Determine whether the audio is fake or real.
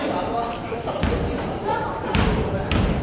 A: fake